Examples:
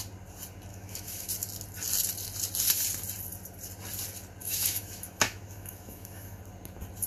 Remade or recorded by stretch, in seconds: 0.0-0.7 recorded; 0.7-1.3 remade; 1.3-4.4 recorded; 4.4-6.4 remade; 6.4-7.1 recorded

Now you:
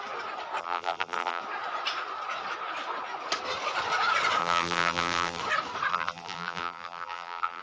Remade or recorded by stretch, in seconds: 0.0-0.6 recorded; 0.6-1.4 remade; 1.4-4.4 recorded; 4.4-5.4 remade; 5.4-5.9 recorded; 5.9-7.6 remade

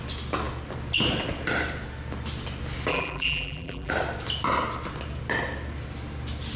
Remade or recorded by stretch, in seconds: 0.0-2.9 recorded; 2.9-3.9 remade; 3.9-6.6 recorded